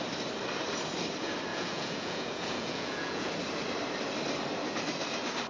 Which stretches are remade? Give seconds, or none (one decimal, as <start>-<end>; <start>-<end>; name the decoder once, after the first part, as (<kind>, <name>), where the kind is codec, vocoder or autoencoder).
1.5-3.3 (vocoder, Vocos)